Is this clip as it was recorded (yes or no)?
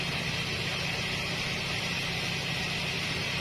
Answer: yes